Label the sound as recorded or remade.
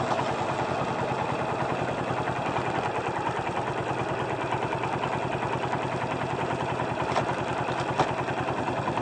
recorded